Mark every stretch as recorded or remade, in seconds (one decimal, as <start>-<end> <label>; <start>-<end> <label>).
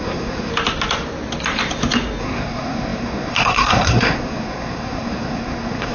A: 0.0-0.5 remade; 0.5-2.2 recorded; 2.2-5.9 remade